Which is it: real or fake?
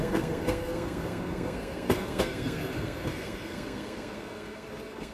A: fake